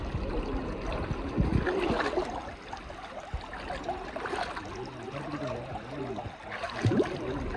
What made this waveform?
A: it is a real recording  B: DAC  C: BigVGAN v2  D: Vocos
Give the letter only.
A